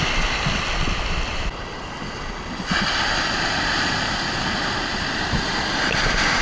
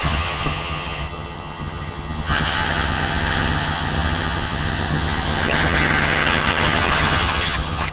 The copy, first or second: second